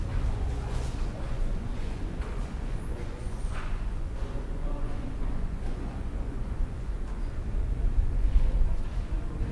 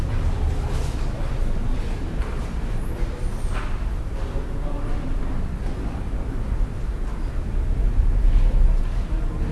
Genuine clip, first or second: second